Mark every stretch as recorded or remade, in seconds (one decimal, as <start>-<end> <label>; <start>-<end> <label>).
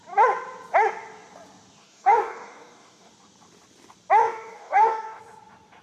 0.0-1.8 recorded; 1.8-3.1 remade; 3.1-4.2 recorded; 4.2-5.2 remade; 5.2-5.8 recorded